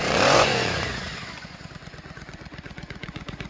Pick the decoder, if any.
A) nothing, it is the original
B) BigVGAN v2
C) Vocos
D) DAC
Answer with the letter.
C